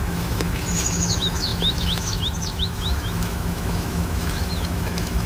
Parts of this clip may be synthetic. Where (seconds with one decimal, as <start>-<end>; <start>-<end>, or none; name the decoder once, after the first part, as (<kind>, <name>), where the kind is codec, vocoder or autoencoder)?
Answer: 0.0-5.3 (autoencoder, DAC-VAE)